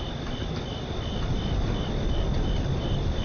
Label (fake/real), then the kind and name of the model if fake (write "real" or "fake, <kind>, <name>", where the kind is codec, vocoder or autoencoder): real